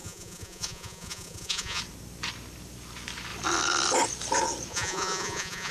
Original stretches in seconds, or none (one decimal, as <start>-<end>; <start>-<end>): 1.8-4.7